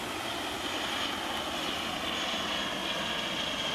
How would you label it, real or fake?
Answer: real